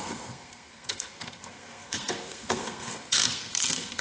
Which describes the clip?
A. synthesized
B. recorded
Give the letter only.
A